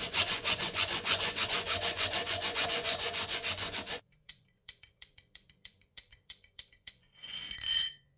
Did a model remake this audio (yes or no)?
yes